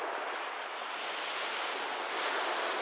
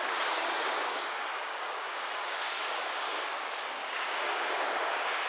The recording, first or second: first